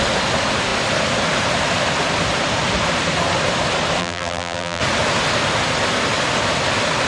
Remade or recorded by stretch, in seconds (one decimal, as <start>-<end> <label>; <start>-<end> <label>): 0.0-4.0 recorded; 4.0-4.8 remade; 4.8-7.1 recorded